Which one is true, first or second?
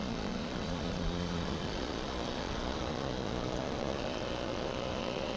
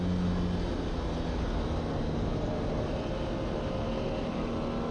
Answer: second